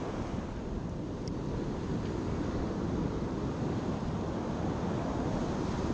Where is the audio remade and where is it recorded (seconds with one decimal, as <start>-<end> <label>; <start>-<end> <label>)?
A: 0.0-5.9 recorded